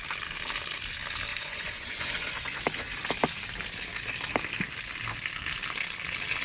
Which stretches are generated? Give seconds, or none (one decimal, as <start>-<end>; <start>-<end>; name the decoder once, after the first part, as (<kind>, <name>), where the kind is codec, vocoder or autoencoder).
1.3-2.6 (vocoder, Vocos)